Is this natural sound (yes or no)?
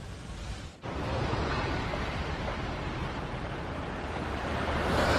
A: no